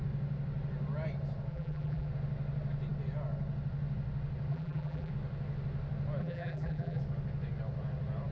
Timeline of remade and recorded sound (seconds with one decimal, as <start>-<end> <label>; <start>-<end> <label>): 0.0-1.5 recorded; 1.5-2.1 remade; 2.1-4.5 recorded; 4.5-5.1 remade; 5.1-6.2 recorded; 6.2-7.0 remade; 7.0-8.3 recorded